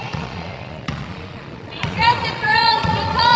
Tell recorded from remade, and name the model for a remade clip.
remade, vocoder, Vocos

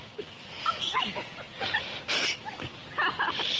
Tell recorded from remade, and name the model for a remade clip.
recorded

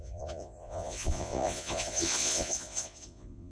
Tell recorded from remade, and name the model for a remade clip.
remade, vocoder, Vocos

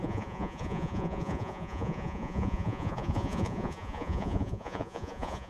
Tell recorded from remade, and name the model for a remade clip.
remade, vocoder, Vocos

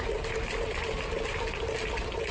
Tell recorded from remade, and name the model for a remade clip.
recorded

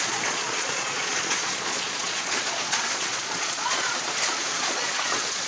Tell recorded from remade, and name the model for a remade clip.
remade, vocoder, Vocos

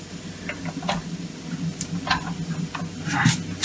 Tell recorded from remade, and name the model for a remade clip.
recorded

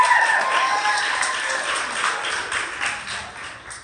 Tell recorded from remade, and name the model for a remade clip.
recorded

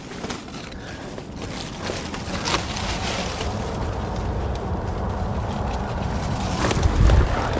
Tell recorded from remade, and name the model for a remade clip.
recorded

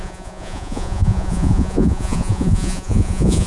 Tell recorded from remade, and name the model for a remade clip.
remade, vocoder, Vocos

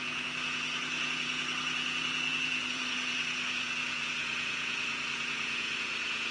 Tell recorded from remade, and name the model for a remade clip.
remade, vocoder, Vocos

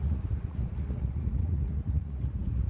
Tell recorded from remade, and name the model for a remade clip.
remade, vocoder, Vocos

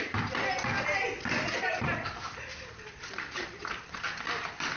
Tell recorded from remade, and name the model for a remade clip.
recorded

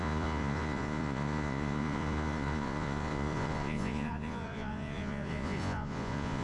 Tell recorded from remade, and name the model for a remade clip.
remade, vocoder, Vocos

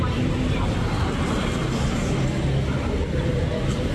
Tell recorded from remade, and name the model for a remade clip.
recorded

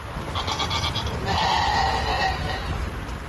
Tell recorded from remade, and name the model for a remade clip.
recorded